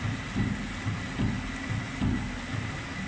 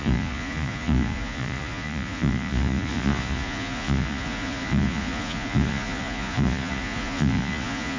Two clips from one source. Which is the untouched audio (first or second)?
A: first